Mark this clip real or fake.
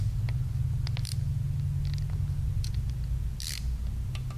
real